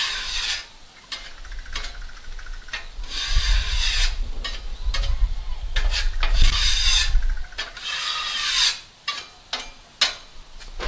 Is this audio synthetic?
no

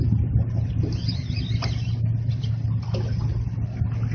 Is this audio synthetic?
no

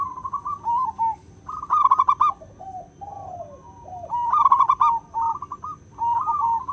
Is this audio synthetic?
no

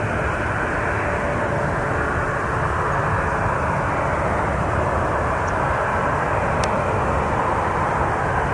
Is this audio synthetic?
no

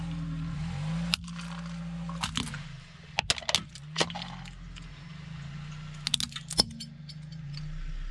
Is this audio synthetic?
no